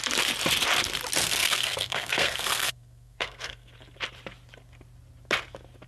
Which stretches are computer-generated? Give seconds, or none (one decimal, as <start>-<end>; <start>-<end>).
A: 1.2-3.7